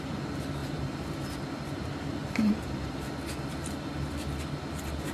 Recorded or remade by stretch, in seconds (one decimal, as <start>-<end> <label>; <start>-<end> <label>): 0.0-0.6 recorded; 0.6-1.1 remade; 1.1-2.2 recorded; 2.2-3.2 remade; 3.2-5.1 recorded